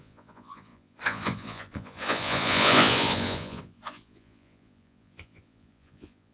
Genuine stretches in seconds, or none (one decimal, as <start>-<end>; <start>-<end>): none